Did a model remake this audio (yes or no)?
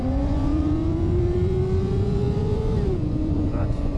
yes